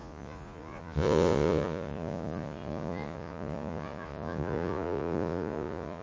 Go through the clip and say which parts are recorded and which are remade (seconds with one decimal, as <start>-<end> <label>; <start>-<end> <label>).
0.0-6.0 remade